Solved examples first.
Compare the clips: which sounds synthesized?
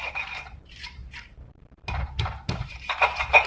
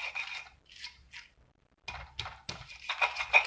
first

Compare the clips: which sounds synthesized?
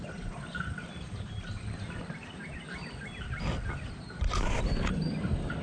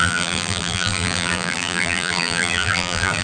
second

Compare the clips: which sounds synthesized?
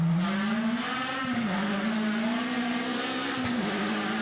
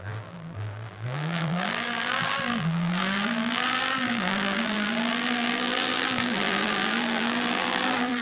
second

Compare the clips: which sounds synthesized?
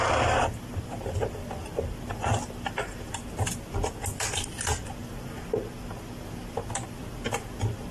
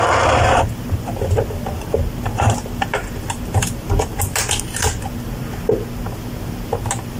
first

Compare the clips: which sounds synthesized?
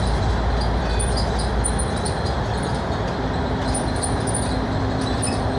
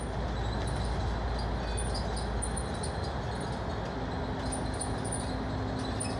first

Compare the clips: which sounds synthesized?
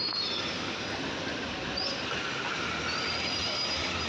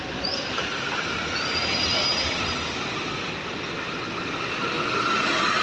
second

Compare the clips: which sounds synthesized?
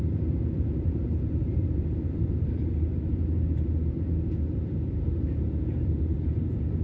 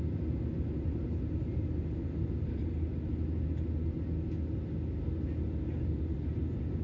first